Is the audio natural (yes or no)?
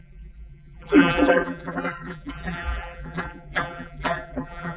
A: no